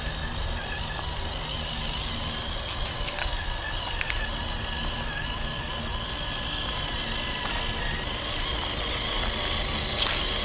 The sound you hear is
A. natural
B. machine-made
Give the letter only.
A